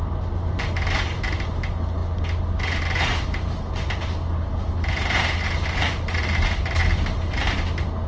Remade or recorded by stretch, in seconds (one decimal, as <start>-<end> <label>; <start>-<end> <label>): 0.0-8.1 recorded